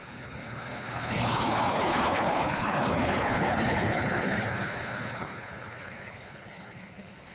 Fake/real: fake